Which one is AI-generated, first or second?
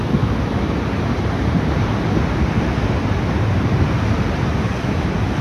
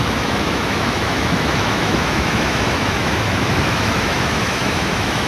second